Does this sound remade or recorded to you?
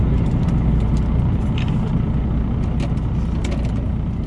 recorded